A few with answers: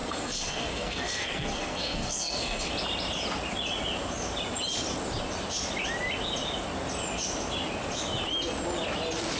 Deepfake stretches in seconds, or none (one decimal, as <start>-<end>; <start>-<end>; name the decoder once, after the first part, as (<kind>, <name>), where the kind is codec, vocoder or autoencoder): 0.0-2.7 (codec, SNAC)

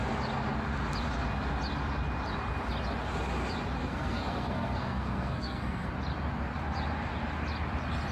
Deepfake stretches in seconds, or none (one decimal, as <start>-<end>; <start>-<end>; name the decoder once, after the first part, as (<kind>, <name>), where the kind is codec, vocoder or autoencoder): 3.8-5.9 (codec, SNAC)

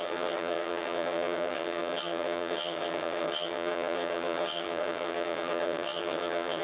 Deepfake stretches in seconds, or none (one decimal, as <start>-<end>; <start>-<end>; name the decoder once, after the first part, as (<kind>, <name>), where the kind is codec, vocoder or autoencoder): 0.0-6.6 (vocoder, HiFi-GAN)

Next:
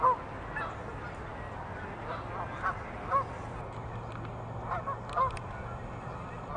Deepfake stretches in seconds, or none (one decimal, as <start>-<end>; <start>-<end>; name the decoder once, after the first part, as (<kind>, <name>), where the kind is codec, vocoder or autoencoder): none